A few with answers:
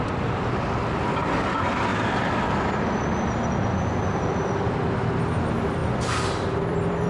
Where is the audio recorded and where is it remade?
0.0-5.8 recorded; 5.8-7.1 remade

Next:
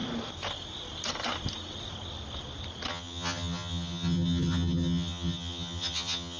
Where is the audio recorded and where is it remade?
0.0-2.9 recorded; 2.9-6.4 remade

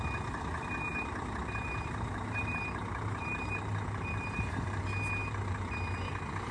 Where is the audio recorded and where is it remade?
0.0-0.9 recorded; 0.9-4.8 remade; 4.8-5.2 recorded; 5.2-5.7 remade; 5.7-6.5 recorded